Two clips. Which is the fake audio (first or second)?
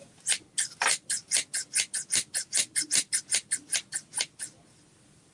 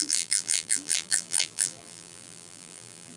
second